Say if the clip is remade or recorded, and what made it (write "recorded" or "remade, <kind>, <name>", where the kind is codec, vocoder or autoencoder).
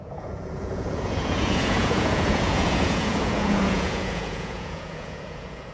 remade, vocoder, Vocos